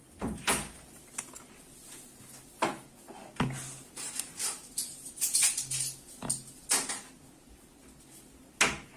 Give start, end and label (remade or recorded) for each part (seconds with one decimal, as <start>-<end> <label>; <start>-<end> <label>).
0.0-9.0 recorded